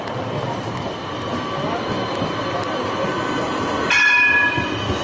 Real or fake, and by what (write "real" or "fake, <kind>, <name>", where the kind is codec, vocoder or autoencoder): real